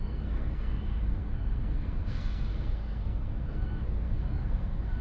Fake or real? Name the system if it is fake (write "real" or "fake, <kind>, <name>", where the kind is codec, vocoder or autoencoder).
fake, codec, SNAC